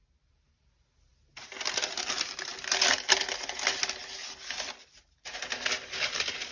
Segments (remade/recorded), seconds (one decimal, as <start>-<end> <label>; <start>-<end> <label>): 0.0-6.5 recorded